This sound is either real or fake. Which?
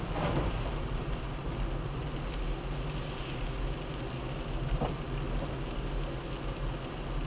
real